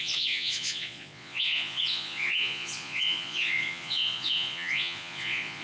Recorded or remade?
remade